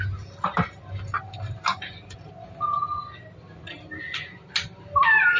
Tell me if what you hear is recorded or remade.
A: recorded